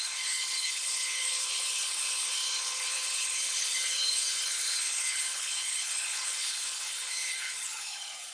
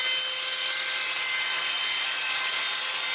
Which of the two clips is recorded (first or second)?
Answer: second